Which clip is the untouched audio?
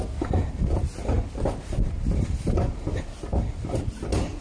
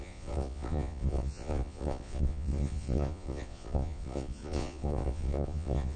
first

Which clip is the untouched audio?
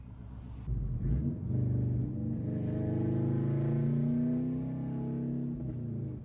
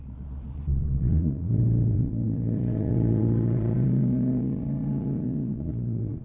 first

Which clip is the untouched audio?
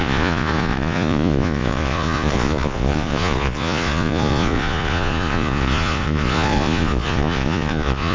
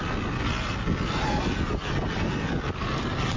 second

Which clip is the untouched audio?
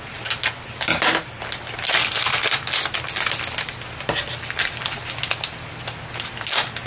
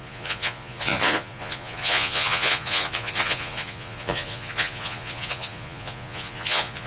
first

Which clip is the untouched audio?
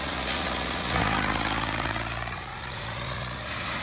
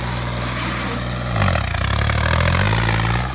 second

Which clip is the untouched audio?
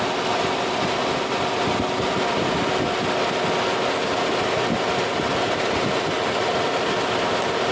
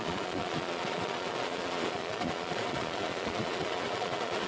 first